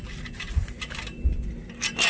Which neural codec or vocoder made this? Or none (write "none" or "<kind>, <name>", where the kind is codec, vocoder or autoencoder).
none